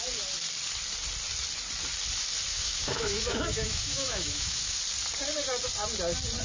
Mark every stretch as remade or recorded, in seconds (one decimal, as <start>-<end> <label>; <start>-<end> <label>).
0.0-2.5 recorded; 2.5-4.8 remade; 4.8-6.4 recorded